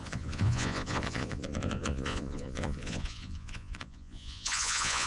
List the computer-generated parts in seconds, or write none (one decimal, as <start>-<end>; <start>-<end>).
0.0-5.1